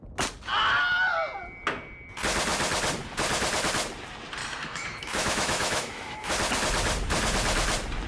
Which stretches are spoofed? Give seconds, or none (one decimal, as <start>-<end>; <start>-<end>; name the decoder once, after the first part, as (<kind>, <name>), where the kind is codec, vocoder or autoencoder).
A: 4.4-6.3 (autoencoder, DAC-VAE)